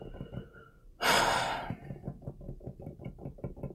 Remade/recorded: remade